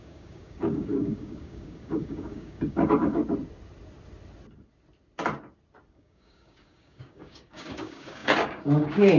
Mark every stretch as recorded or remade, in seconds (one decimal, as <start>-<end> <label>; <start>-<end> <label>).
0.0-3.2 remade; 3.2-5.9 recorded; 5.9-9.2 remade